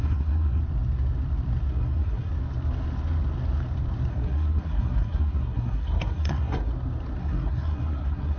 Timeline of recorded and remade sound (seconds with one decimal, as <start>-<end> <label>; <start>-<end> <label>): 0.0-0.6 remade; 0.6-1.7 recorded; 1.7-2.3 remade; 2.3-4.1 recorded; 4.1-6.7 remade; 6.7-7.2 recorded; 7.2-8.4 remade